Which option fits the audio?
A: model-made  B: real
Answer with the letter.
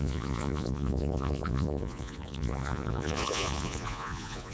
A